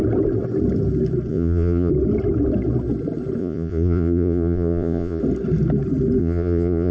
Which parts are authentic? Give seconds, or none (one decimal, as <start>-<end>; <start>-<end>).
0.0-1.3; 1.9-3.4; 5.2-6.2